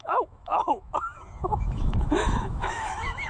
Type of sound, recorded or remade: remade